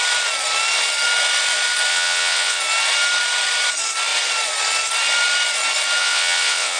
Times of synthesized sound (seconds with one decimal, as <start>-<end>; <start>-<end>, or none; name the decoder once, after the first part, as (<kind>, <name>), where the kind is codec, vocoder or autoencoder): 1.9-2.6 (vocoder, WaveNeXt); 6.0-6.8